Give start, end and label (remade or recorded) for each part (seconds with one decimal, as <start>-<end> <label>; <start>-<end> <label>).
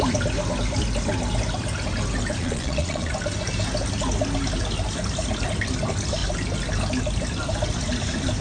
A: 0.0-2.4 recorded; 2.4-3.1 remade; 3.1-8.4 recorded